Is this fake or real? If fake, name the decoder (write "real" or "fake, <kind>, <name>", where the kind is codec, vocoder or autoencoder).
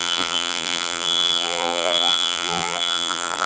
fake, vocoder, BigVGAN v2